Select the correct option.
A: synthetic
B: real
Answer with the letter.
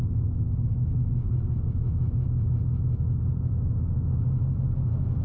B